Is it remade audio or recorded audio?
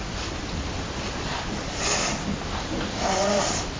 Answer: recorded